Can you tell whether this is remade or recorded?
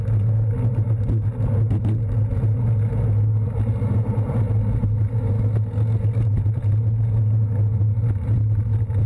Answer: recorded